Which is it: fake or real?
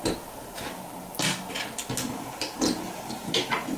real